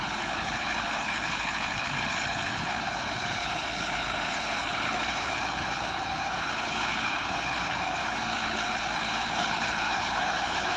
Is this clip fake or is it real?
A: fake